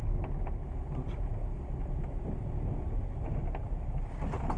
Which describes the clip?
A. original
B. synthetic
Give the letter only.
A